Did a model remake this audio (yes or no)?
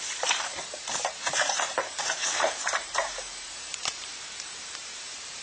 yes